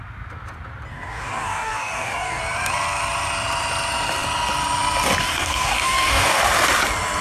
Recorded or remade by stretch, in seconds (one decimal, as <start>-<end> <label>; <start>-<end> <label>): 0.0-0.9 recorded; 0.9-2.4 remade; 2.4-5.2 recorded; 5.2-6.4 remade; 6.4-7.2 recorded